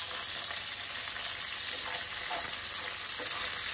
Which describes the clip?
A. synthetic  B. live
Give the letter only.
B